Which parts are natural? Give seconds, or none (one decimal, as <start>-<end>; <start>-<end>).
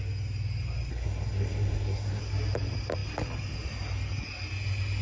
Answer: 0.0-0.9; 2.2-5.0